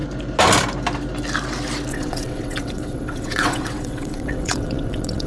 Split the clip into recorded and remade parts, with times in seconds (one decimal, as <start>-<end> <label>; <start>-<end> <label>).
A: 0.0-1.9 recorded; 1.9-5.3 remade